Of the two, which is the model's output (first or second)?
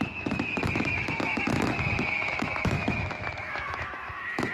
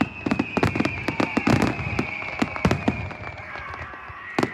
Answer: first